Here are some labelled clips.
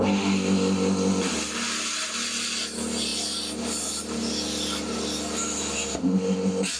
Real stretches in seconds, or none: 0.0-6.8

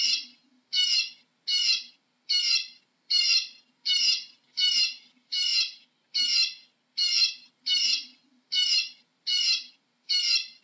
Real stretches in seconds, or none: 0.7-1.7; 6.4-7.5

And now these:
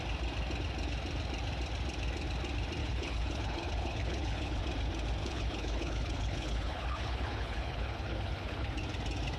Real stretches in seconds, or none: 0.0-2.8; 4.6-5.2; 8.7-9.4